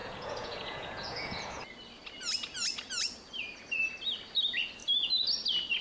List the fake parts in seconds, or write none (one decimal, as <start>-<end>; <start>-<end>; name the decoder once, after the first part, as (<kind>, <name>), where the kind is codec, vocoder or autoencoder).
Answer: 0.0-1.6 (vocoder, Vocos)